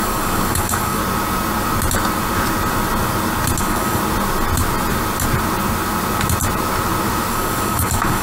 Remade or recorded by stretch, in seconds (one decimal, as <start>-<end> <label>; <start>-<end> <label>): 0.0-1.0 remade; 1.0-3.6 recorded; 3.6-4.0 remade; 4.0-7.3 recorded; 7.3-8.2 remade